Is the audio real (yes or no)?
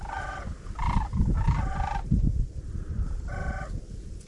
yes